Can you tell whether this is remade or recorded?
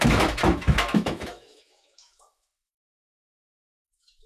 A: remade